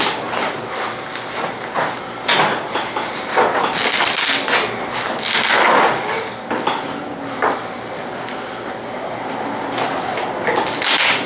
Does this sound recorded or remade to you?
recorded